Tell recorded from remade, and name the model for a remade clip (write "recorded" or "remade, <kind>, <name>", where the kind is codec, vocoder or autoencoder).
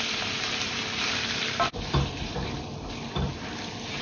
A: recorded